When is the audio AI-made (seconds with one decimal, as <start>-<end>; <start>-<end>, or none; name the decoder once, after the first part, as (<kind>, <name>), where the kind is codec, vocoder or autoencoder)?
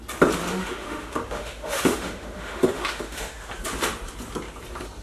0.5-3.5 (autoencoder, DAC-VAE)